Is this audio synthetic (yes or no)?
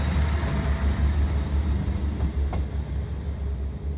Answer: no